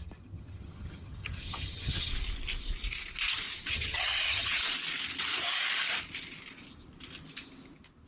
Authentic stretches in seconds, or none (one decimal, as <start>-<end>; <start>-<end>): 2.1-3.7; 4.6-8.1